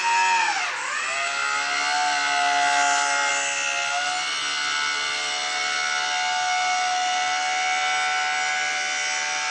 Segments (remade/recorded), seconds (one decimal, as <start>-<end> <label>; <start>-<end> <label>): 0.0-9.5 recorded